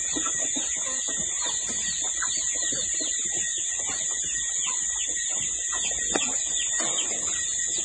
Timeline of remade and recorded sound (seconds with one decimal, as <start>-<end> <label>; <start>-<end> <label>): 0.0-7.8 recorded